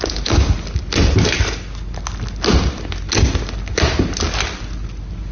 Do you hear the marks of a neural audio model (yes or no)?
no